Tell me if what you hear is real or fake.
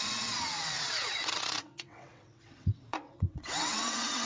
fake